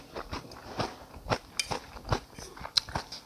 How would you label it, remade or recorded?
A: recorded